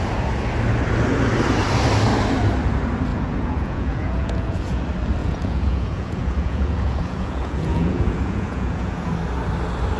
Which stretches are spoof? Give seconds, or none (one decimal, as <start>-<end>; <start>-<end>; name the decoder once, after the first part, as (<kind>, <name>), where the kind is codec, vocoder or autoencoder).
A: 3.1-4.8 (vocoder, Vocos); 5.2-9.1